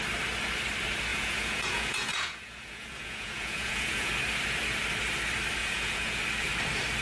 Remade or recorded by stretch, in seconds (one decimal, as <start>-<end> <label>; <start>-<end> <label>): 0.0-1.1 recorded; 1.1-4.1 remade; 4.1-5.6 recorded; 5.6-6.2 remade; 6.2-7.0 recorded